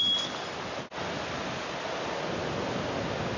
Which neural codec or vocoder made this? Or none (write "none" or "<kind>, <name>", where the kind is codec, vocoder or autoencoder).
none